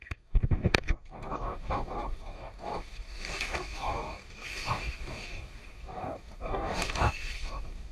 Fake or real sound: fake